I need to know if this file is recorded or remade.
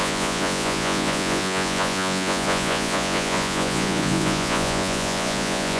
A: remade